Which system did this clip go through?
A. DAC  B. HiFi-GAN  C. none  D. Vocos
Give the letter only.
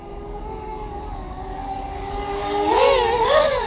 A